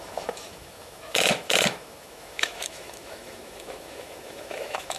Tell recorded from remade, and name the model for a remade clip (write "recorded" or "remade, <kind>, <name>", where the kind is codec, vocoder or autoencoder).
remade, autoencoder, DAC-VAE